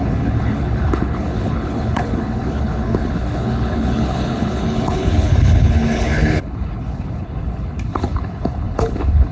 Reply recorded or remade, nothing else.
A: remade